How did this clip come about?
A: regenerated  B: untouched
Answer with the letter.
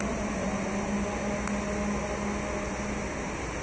B